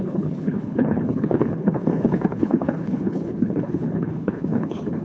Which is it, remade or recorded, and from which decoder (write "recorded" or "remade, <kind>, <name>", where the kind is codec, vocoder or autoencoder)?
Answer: remade, codec, HILCodec